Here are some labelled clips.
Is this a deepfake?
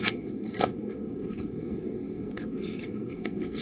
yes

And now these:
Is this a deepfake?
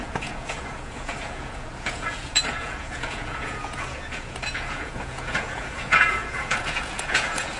yes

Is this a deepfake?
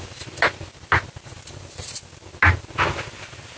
no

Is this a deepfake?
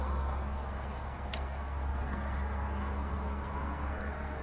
yes